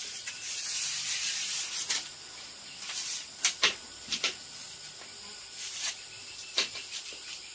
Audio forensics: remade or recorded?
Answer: remade